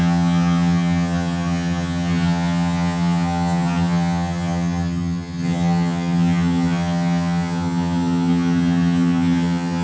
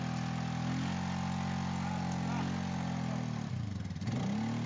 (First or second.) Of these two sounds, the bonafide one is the second